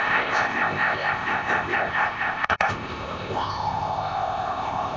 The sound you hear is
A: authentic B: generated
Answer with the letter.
B